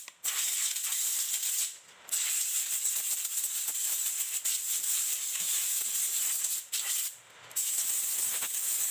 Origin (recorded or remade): remade